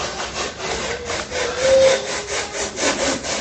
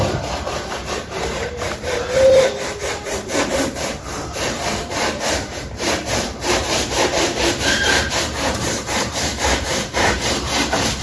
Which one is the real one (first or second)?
first